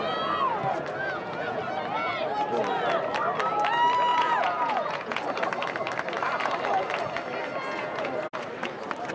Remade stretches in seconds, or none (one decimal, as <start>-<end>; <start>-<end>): 1.0-1.6; 4.1-5.2; 7.6-8.1